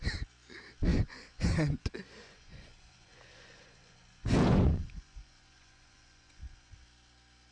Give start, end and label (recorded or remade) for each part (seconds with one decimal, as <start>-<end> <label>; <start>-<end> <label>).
0.0-0.9 recorded; 0.9-1.8 remade; 1.8-2.2 recorded; 2.2-6.7 remade; 6.7-7.5 recorded